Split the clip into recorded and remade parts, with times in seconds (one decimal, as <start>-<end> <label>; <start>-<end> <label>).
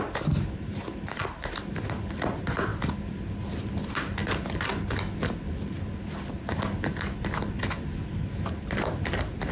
0.0-9.5 recorded